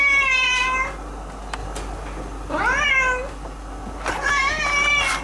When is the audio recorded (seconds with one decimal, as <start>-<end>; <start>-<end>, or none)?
0.0-5.2